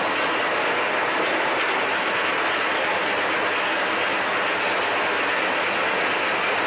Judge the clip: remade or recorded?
recorded